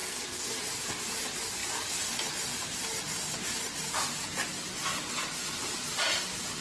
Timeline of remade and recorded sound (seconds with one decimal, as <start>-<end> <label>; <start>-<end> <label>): 0.0-0.6 remade; 0.6-6.6 recorded